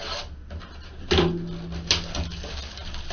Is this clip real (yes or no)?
yes